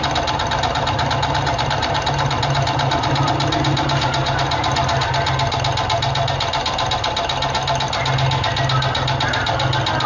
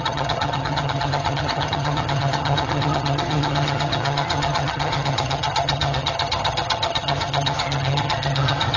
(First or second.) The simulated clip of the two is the second